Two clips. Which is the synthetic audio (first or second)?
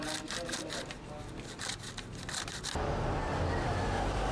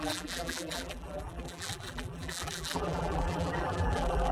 second